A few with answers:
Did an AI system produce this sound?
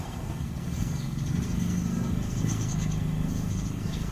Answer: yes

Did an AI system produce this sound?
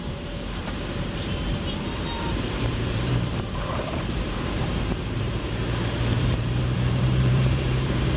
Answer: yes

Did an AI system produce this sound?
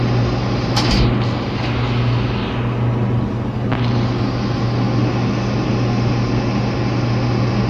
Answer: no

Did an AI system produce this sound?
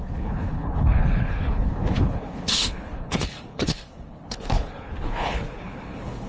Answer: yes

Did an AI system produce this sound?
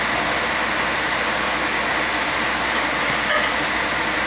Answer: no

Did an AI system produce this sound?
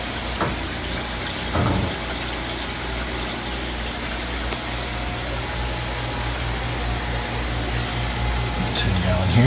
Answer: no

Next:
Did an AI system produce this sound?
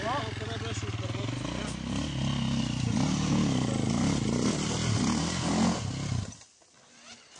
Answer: no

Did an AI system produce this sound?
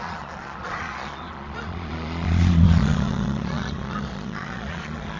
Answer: yes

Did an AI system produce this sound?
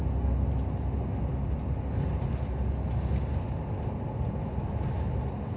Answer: no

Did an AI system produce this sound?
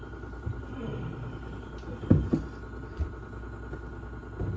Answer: no